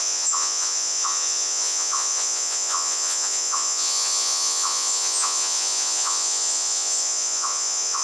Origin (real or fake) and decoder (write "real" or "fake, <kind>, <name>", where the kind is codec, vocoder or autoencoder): fake, vocoder, Vocos